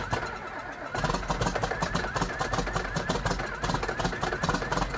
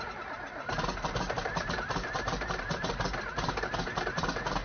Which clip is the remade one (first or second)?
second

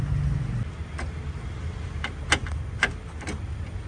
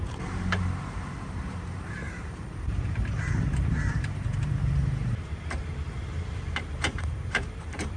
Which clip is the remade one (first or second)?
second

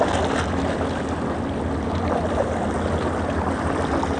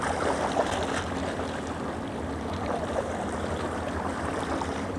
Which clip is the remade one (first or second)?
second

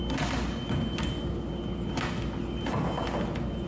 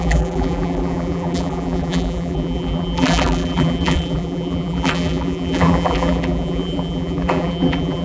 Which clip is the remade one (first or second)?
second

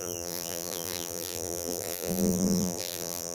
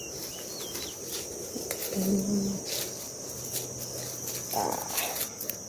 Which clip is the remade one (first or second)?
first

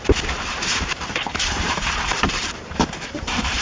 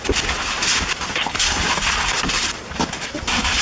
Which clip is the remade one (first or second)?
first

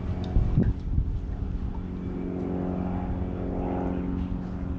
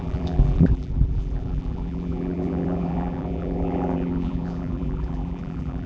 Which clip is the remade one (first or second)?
second